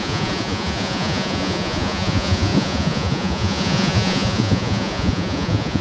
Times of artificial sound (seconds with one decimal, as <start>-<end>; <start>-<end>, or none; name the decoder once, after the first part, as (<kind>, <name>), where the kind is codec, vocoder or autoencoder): 0.0-5.8 (vocoder, Vocos)